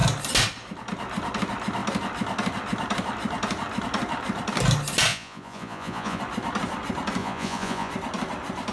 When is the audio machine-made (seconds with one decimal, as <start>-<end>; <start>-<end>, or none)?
5.1-6.2; 7.2-7.9